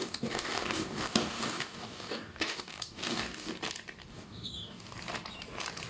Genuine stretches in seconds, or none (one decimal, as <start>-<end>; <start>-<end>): 3.5-4.1; 4.9-5.9